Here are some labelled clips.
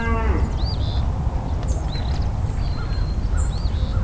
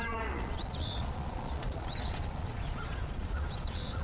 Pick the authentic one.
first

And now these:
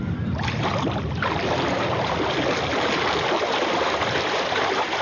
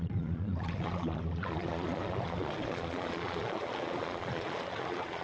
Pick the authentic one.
first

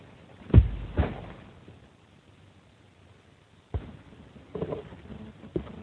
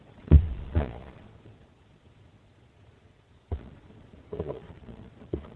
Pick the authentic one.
first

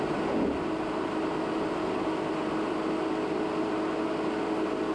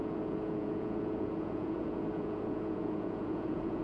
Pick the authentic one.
first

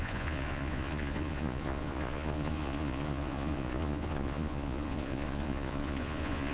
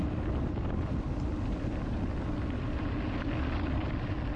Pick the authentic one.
second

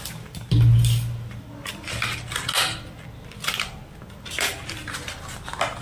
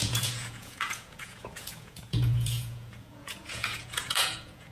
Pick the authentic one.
first